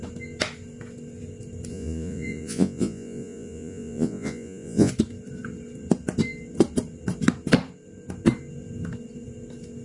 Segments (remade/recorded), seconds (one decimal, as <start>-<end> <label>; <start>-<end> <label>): 0.0-1.7 recorded; 1.7-4.9 remade; 4.9-9.8 recorded